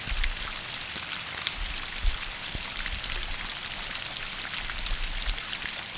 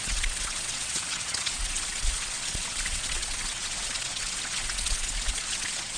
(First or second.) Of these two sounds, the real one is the first